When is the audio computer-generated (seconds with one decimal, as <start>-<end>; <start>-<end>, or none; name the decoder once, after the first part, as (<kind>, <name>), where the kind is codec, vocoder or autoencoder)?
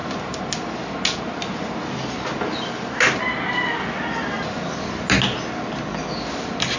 none